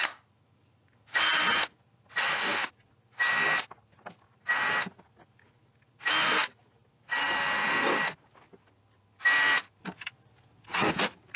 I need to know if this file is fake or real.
real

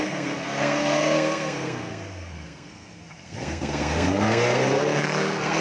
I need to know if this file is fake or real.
fake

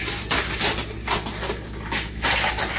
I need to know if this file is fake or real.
real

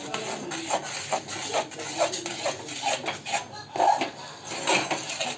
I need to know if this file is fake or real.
real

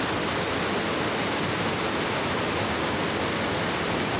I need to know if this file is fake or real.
real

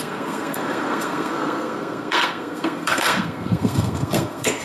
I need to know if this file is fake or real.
fake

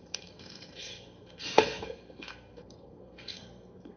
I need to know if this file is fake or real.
fake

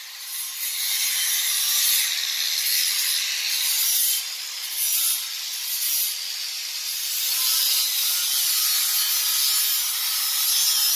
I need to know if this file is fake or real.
real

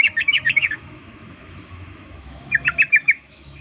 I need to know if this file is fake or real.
fake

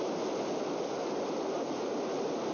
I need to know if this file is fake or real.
real